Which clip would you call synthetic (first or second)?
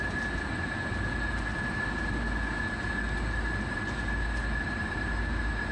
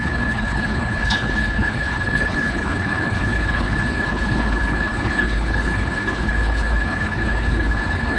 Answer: second